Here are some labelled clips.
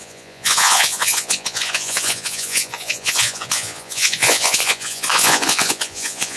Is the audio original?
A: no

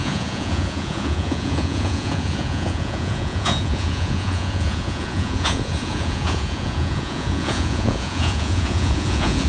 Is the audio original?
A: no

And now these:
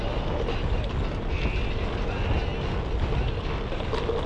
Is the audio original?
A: yes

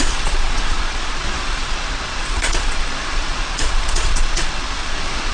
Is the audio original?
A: no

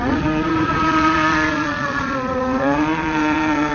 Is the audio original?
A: no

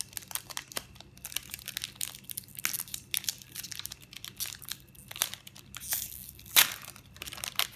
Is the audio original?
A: yes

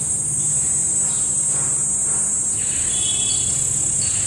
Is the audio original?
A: yes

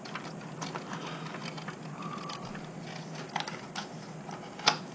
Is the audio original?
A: yes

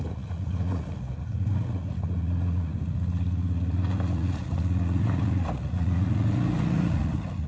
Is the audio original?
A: no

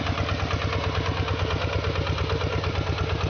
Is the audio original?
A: yes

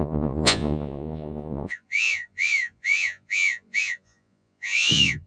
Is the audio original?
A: no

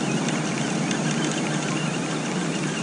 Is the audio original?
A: yes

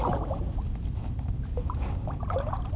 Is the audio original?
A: yes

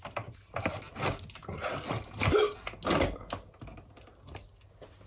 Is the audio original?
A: yes